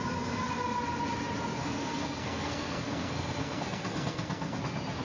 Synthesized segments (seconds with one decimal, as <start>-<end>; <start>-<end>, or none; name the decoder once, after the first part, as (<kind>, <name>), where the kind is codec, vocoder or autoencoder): 1.6-4.6 (codec, SNAC)